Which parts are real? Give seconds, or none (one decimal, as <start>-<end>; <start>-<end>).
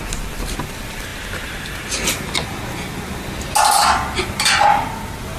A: 0.0-5.4